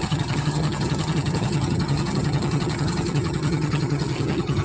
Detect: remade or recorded remade